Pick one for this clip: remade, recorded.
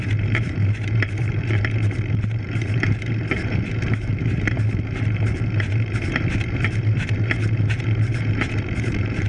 remade